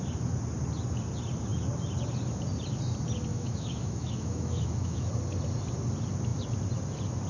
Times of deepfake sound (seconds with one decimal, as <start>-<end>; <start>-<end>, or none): 3.3-5.1